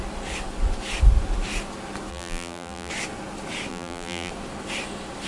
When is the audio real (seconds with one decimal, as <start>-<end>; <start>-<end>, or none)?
0.0-2.1; 2.9-3.7; 4.3-5.3